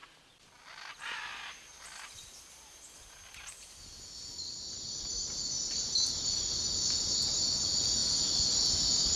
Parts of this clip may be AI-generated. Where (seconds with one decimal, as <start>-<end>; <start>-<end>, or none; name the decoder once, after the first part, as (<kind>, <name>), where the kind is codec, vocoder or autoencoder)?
none